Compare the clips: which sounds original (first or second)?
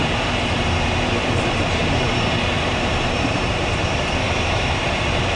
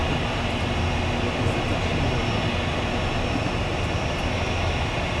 second